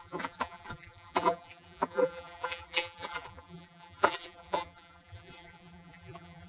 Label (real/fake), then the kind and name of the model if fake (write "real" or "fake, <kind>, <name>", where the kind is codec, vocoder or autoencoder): fake, vocoder, BigVGAN v2